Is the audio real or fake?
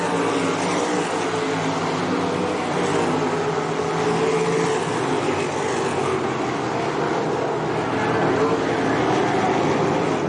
real